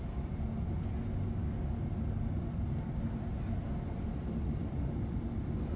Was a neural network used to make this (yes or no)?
no